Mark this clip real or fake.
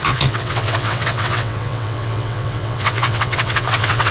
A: fake